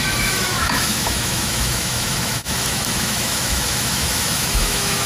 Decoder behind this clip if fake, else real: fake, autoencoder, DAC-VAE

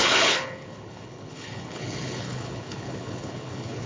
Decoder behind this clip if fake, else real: fake, codec, HILCodec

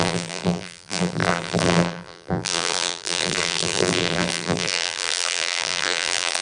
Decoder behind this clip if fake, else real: fake, vocoder, BigVGAN v2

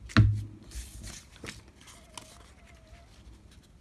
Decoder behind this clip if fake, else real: real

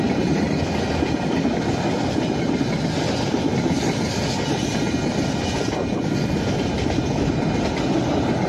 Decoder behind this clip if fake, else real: real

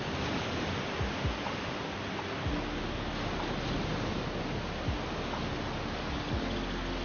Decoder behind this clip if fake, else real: real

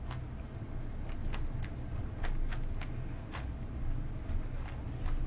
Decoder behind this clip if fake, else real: real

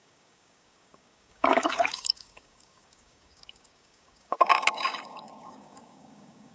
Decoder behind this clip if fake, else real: fake, codec, DAC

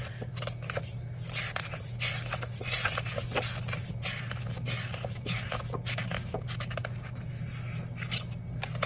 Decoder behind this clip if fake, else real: real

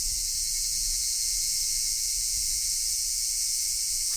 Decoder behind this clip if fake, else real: fake, vocoder, Vocos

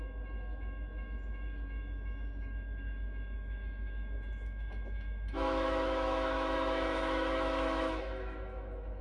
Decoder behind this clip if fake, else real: fake, autoencoder, DAC-VAE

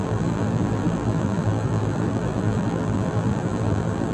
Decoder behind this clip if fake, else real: fake, vocoder, BigVGAN v2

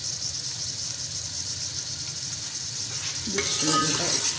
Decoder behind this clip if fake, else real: real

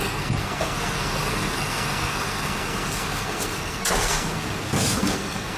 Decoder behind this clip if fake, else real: fake, codec, SNAC